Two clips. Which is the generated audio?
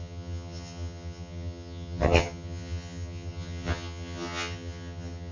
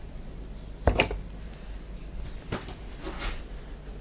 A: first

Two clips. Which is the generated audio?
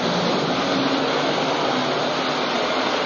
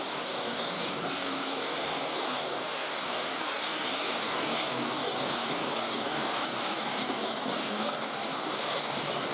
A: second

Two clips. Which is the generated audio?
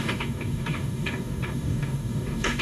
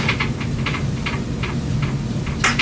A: first